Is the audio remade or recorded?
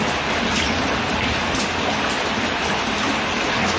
recorded